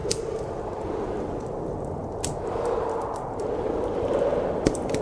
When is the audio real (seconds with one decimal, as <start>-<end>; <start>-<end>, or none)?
0.6-5.0